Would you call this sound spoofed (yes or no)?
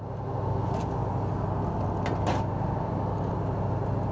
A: no